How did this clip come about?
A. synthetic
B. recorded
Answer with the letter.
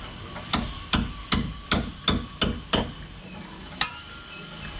B